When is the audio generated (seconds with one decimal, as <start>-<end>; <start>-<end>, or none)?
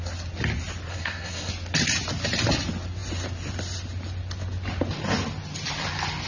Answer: 0.9-1.5